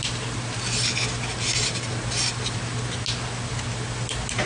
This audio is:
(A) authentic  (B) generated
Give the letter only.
A